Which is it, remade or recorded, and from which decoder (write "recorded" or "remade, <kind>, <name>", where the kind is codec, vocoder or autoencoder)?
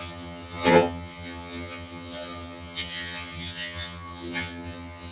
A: remade, vocoder, HiFi-GAN